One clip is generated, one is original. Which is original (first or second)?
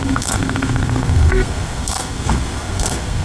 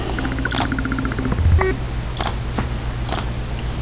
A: second